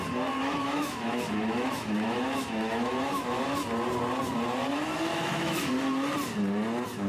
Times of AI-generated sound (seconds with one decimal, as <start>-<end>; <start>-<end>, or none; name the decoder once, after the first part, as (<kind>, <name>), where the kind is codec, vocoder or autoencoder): 0.4-3.4 (autoencoder, DAC-VAE); 5.1-5.7